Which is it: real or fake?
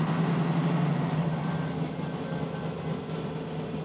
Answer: real